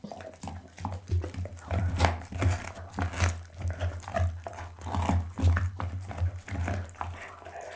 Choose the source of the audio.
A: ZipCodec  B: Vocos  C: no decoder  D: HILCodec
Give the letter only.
C